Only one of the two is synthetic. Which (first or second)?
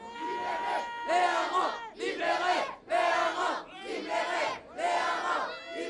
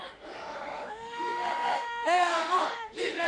second